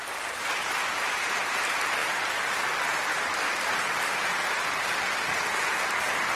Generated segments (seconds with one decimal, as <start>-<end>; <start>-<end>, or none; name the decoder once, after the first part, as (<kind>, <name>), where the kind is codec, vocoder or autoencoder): 0.0-6.4 (vocoder, BigVGAN v2)